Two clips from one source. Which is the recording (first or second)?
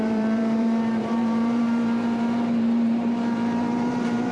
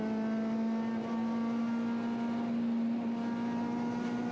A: second